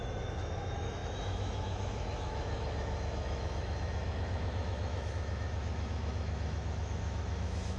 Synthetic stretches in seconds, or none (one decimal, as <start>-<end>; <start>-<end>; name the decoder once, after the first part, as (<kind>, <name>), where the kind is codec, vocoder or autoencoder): 0.0-7.8 (autoencoder, DAC-VAE)